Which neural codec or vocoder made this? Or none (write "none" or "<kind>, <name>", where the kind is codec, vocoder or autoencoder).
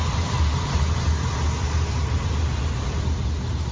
none